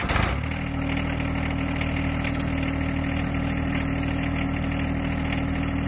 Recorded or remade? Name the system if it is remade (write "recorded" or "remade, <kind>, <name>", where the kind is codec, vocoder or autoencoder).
recorded